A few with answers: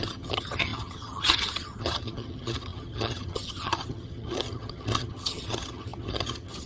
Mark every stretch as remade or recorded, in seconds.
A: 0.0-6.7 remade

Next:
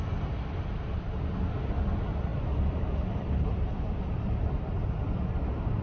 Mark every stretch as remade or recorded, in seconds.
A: 0.0-5.8 recorded

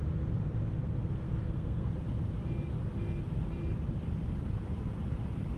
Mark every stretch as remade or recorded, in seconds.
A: 0.0-0.8 recorded; 0.8-1.9 remade; 1.9-5.6 recorded

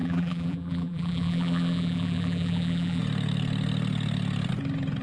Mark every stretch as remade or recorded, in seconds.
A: 0.0-3.0 remade; 3.0-5.0 recorded